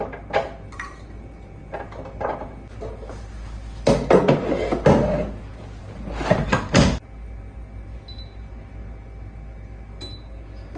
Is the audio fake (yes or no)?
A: no